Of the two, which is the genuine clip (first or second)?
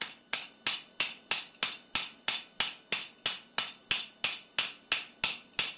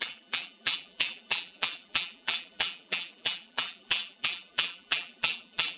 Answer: first